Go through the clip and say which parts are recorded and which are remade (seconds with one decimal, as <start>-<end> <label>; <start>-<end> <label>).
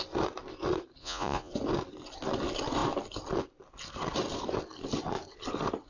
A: 0.0-1.0 recorded; 1.0-1.5 remade; 1.5-5.9 recorded